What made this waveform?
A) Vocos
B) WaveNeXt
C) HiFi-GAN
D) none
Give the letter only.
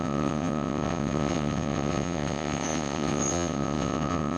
B